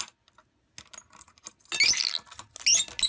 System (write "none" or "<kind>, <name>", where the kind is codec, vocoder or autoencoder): none